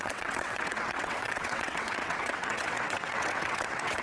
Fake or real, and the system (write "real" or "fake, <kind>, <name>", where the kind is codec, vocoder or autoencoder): fake, vocoder, WaveNeXt